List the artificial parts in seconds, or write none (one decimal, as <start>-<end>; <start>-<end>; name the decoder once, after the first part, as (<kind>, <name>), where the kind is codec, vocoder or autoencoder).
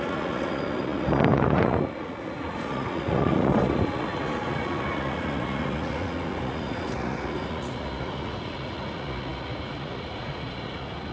0.0-11.1 (vocoder, Vocos)